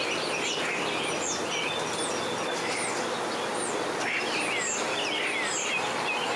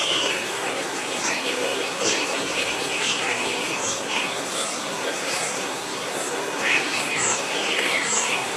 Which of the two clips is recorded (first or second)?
first